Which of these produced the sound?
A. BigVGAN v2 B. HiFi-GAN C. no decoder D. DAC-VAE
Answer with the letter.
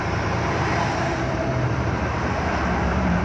A